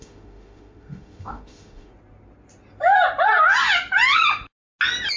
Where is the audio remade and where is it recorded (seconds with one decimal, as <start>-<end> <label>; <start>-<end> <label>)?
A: 0.0-1.9 remade; 1.9-5.2 recorded